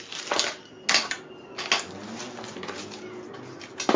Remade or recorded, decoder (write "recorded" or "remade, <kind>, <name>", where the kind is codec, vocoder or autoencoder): recorded